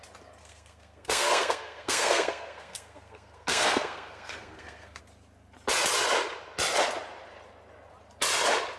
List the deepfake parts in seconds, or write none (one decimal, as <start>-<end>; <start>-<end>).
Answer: 0.4-5.0